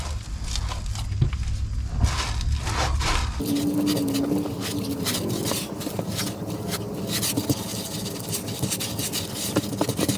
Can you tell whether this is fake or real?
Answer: real